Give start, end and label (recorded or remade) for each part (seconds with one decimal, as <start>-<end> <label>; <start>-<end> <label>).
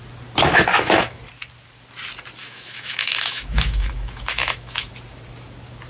0.0-0.7 recorded; 0.7-1.2 remade; 1.2-2.4 recorded; 2.4-4.9 remade; 4.9-5.9 recorded